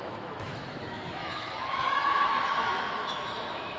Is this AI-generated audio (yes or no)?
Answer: yes